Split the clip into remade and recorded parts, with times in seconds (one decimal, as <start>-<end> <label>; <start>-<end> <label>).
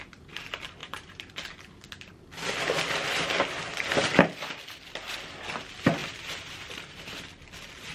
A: 0.0-0.8 recorded; 0.8-1.3 remade; 1.3-6.0 recorded; 6.0-7.1 remade; 7.1-7.9 recorded